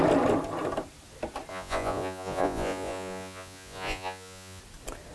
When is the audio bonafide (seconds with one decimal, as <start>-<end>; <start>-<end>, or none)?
0.0-1.5; 4.6-5.1